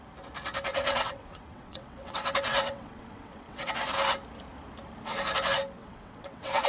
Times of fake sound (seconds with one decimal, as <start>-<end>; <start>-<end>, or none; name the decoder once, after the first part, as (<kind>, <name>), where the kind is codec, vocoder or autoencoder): 0.7-3.7 (vocoder, WaveNeXt); 5.8-6.7